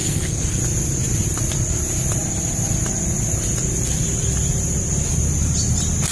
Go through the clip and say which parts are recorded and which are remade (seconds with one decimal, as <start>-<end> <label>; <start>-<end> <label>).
0.0-0.6 remade; 0.6-6.1 recorded